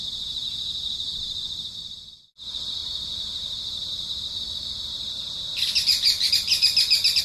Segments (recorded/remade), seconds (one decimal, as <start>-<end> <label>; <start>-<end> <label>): 0.0-7.2 recorded